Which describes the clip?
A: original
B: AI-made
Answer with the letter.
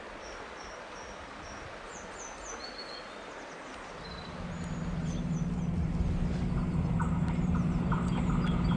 A